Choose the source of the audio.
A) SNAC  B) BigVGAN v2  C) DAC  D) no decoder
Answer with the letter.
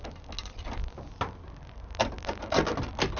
D